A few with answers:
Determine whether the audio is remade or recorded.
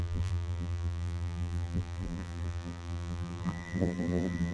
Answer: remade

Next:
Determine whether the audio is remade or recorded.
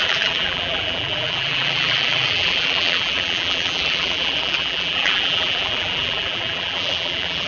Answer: remade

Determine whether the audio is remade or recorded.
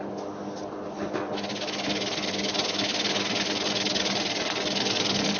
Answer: recorded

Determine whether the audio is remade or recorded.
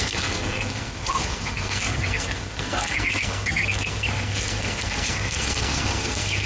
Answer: remade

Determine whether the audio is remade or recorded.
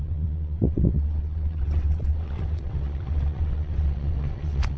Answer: remade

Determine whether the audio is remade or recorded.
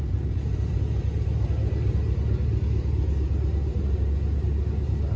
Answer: recorded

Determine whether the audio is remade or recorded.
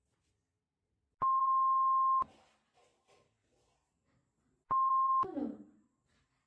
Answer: recorded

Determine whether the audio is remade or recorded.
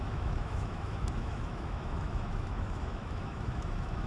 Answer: remade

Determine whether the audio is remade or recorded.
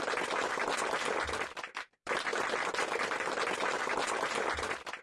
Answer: remade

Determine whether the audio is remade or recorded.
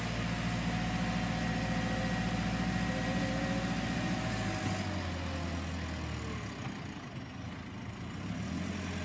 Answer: recorded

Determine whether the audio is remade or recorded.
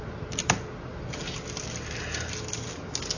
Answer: recorded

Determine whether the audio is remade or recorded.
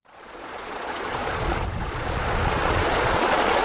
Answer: remade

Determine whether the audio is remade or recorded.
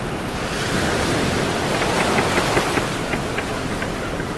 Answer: recorded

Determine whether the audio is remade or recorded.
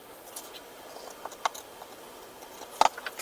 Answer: recorded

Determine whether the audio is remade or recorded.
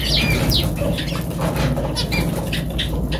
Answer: recorded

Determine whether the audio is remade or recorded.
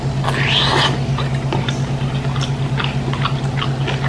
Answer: recorded